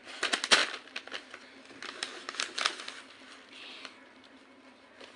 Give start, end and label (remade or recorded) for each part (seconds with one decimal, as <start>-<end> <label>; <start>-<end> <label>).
0.0-5.2 recorded